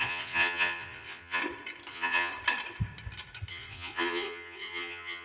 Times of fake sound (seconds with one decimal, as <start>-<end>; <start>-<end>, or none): 0.0-1.4; 1.9-2.3; 3.5-5.2